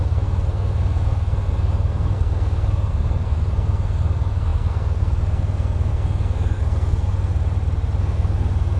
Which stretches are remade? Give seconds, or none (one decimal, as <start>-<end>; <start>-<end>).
0.0-7.3; 8.0-8.8